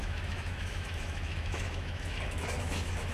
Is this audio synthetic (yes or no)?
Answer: yes